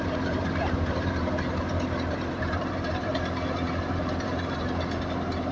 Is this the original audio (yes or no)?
no